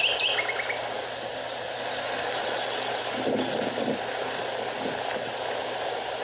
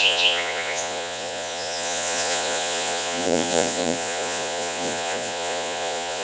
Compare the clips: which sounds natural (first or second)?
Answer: first